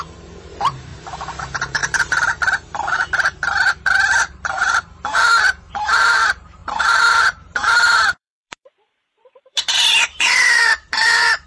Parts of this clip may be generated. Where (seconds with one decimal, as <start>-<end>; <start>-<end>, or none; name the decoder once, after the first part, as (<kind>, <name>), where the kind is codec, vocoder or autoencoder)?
0.0-0.9 (vocoder, BigVGAN v2); 1.4-11.5